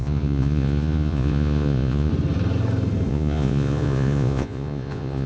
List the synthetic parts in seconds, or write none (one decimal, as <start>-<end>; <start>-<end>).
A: 0.0-2.1; 3.1-5.3